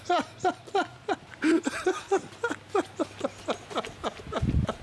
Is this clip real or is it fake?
real